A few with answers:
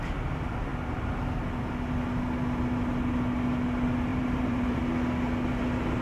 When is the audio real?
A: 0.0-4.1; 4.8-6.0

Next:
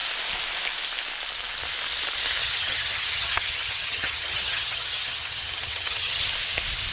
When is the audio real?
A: 0.0-2.4; 6.2-6.9

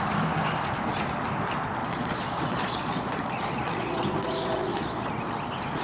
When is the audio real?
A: 0.0-1.8; 5.1-5.8